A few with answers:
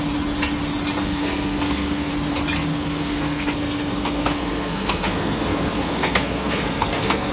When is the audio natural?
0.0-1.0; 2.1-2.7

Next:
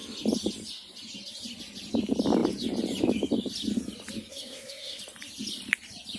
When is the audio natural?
0.0-4.3; 5.0-6.2

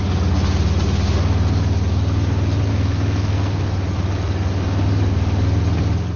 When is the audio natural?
0.0-2.7; 3.6-6.2

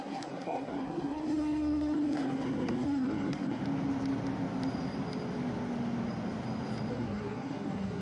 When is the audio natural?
3.6-6.9

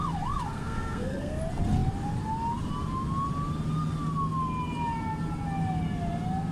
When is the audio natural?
0.0-0.5; 1.4-6.5

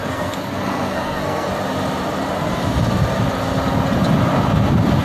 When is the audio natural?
1.5-5.0

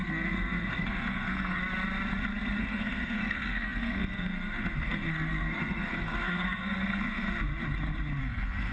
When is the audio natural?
1.6-2.6; 7.5-8.2